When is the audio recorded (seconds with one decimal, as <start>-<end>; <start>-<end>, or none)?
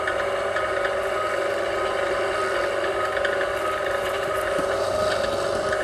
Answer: 0.0-3.8; 4.9-5.8